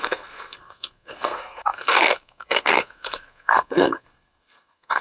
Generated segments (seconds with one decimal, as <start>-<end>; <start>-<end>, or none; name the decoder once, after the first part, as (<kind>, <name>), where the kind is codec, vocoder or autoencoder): 0.0-5.0 (codec, SNAC)